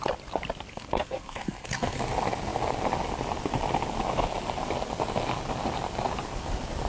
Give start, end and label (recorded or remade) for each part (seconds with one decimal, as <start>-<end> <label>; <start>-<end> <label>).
0.0-0.7 recorded; 0.7-2.0 remade; 2.0-6.9 recorded